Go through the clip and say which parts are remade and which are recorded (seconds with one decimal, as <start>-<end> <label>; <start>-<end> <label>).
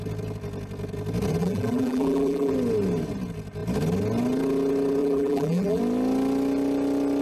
0.0-1.4 recorded; 1.4-2.5 remade; 2.5-5.0 recorded; 5.0-5.8 remade; 5.8-7.2 recorded